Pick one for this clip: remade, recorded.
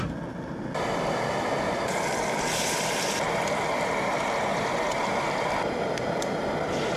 remade